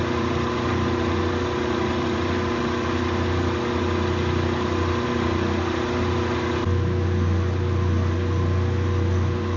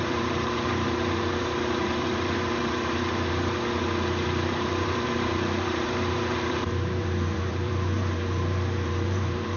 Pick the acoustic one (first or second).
first